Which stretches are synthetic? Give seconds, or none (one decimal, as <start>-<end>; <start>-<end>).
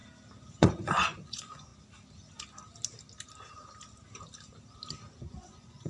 0.6-1.7; 5.2-5.9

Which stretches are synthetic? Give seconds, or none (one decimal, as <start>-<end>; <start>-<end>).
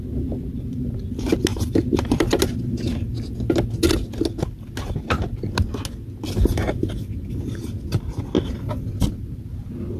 1.5-2.4